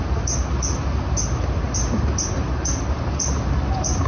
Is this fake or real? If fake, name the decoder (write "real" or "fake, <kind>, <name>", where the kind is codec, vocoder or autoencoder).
real